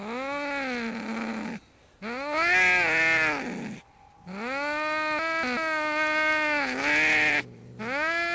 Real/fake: real